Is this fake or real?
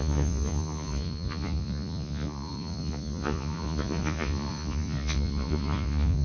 fake